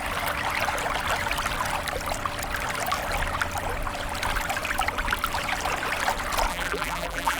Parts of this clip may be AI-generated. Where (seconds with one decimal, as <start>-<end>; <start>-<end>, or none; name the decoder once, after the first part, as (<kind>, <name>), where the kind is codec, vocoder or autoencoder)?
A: 6.5-7.4 (vocoder, BigVGAN v2)